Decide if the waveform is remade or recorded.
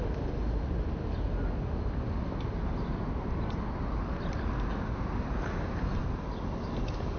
recorded